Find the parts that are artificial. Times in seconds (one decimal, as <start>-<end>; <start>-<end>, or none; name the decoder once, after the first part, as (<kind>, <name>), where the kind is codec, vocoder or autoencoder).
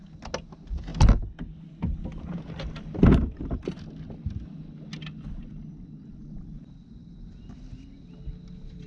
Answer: none